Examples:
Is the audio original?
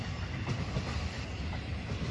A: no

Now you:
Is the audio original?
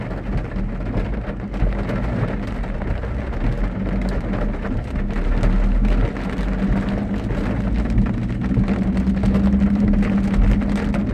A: yes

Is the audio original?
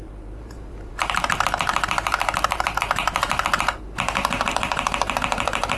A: no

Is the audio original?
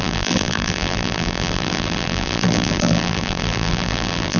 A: no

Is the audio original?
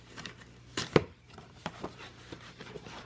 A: no